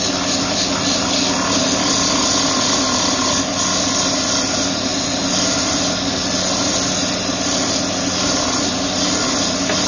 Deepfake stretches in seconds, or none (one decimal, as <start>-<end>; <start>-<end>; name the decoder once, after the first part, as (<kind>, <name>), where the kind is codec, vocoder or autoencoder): none